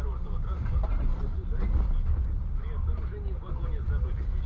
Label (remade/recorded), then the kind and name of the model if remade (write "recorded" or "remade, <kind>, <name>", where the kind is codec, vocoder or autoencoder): recorded